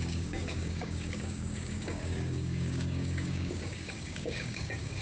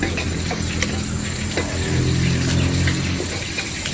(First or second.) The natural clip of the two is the second